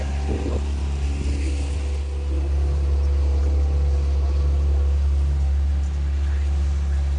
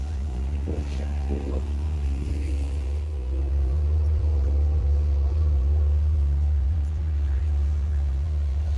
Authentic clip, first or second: first